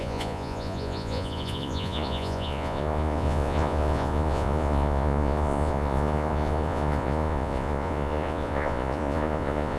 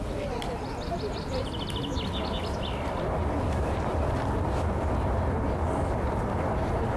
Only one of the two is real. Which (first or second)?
second